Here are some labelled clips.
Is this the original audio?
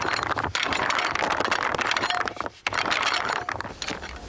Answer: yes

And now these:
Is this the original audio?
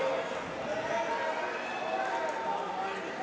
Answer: yes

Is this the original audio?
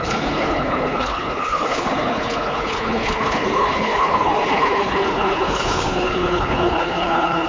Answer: no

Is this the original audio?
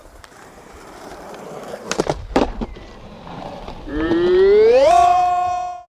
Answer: no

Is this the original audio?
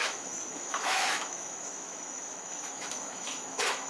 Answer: no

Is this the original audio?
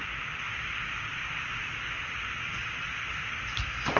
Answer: yes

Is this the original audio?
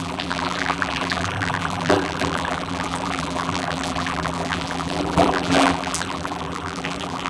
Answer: no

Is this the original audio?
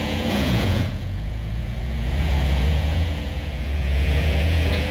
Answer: no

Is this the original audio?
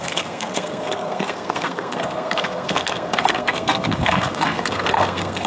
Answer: no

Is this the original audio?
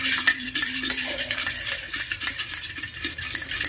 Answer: no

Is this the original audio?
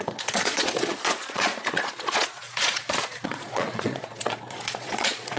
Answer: no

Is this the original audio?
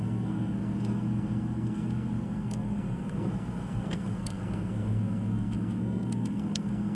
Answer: no